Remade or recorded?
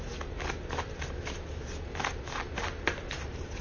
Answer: recorded